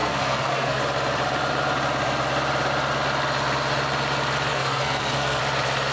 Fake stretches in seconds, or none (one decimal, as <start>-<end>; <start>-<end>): 0.0-0.8; 4.5-5.4